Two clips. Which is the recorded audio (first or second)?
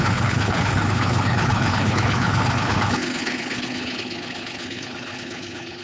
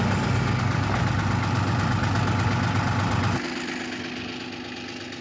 second